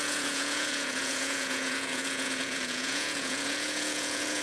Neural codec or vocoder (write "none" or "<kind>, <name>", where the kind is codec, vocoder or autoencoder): vocoder, Vocos